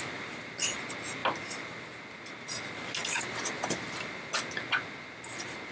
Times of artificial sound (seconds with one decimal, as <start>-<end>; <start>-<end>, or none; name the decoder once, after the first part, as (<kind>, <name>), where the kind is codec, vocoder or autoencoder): none